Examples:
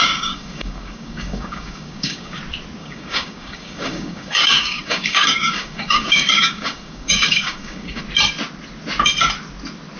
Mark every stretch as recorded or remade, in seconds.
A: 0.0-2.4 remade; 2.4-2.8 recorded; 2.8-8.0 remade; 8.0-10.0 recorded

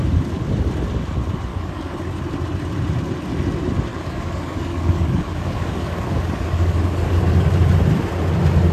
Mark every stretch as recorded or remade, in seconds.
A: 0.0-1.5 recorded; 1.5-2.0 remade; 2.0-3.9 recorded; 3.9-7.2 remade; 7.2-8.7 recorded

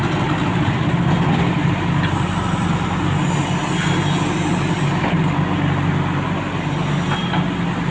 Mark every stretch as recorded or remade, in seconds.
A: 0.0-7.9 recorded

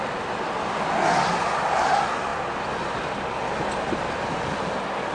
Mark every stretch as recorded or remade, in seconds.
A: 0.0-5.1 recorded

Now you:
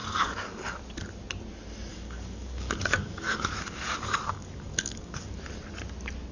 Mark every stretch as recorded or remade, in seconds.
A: 0.0-0.8 remade; 0.8-1.9 recorded; 1.9-5.4 remade; 5.4-6.3 recorded

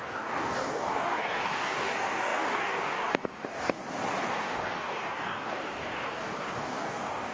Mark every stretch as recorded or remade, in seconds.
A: 0.0-3.8 remade; 3.8-4.4 recorded; 4.4-7.3 remade

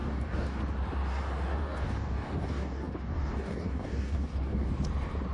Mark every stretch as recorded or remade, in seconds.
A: 0.0-0.6 remade; 0.6-1.5 recorded; 1.5-4.7 remade; 4.7-5.3 recorded

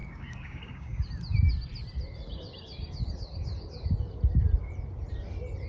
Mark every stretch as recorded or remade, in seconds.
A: 0.0-1.1 remade; 1.1-5.7 recorded